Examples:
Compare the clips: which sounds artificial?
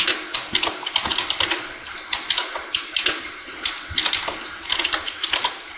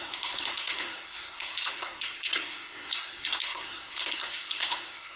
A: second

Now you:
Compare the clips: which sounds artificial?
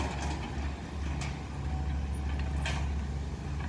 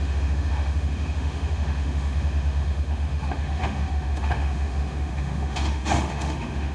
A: second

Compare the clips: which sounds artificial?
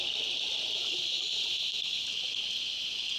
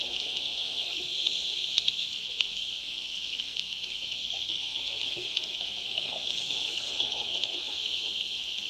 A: second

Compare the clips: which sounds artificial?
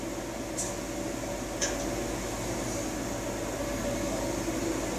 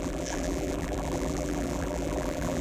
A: second